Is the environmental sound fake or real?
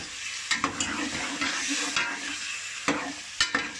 real